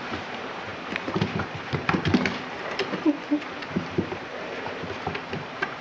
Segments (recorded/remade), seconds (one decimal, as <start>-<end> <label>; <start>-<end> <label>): 0.0-5.8 remade